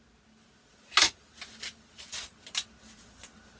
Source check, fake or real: real